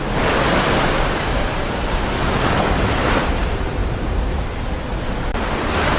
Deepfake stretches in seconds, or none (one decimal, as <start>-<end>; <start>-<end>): 0.0-3.8; 4.3-5.3